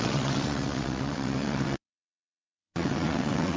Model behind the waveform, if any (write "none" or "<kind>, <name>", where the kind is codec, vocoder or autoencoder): vocoder, WaveNeXt